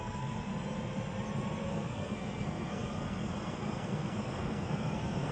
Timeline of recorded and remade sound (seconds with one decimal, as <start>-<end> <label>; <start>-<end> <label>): 0.0-0.5 remade; 0.5-1.7 recorded; 1.7-5.3 remade